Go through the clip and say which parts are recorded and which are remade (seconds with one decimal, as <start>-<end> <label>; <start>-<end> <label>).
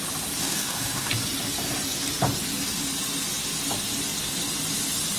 0.0-0.4 recorded; 0.4-1.1 remade; 1.1-5.2 recorded